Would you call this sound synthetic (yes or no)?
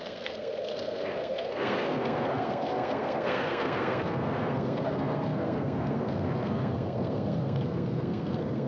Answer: yes